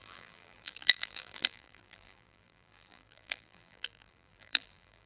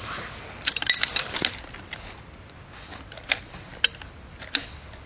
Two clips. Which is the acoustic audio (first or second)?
second